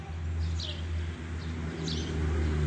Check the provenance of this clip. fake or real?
real